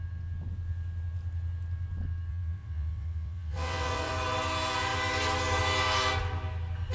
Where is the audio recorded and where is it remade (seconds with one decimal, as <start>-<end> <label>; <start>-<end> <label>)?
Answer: 0.0-2.3 recorded; 2.3-4.1 remade; 4.1-6.9 recorded